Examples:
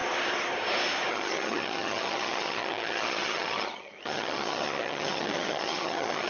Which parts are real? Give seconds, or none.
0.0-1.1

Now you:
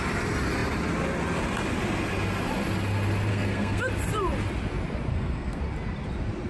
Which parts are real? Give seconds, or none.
0.0-3.3; 3.8-5.1; 5.6-6.5

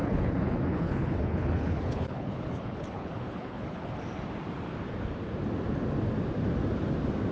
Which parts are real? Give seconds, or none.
3.9-7.3

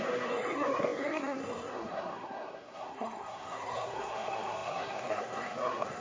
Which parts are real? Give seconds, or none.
none

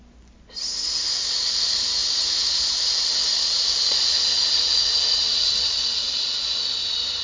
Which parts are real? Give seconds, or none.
0.0-3.7; 6.4-7.2

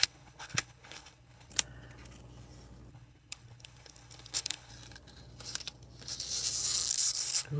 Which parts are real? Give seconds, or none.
1.5-2.9; 4.7-6.9

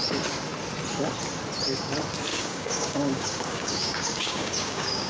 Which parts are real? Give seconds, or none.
0.0-2.3